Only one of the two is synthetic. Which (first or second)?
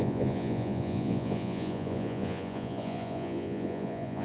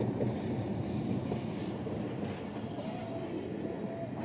first